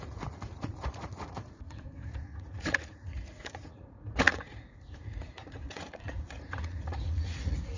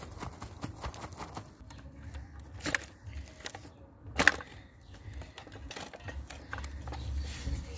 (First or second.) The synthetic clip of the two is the first